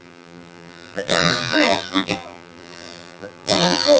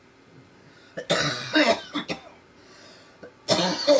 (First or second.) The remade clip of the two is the first